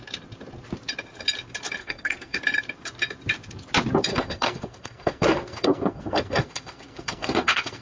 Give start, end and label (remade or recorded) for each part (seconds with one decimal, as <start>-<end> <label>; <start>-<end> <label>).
0.0-1.8 recorded; 1.8-2.4 remade; 2.4-4.1 recorded; 4.1-7.8 remade